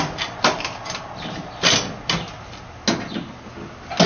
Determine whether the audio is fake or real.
real